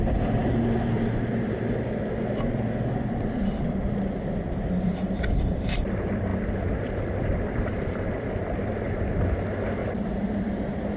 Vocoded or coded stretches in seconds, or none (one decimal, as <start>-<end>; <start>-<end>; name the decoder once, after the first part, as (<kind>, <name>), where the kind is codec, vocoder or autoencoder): 6.3-9.0 (vocoder, BigVGAN v2); 9.8-10.4